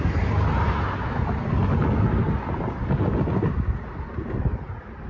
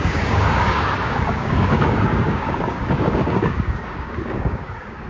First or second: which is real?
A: first